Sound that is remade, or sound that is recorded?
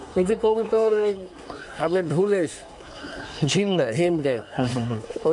remade